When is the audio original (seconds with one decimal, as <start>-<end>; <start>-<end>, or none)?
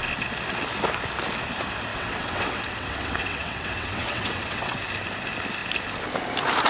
0.0-1.9; 4.8-6.7